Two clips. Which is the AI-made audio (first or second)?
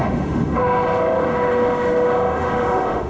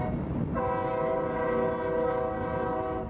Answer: first